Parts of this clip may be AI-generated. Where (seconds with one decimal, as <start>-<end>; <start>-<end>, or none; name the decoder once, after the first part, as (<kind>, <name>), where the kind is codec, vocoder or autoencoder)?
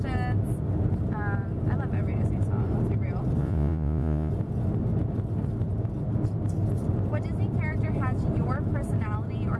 3.4-4.3 (vocoder, Vocos)